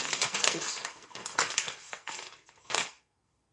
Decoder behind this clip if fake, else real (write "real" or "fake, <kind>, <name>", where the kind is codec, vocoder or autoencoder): fake, codec, SNAC